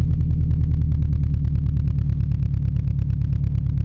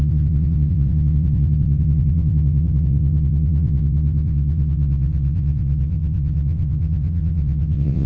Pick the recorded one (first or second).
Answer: first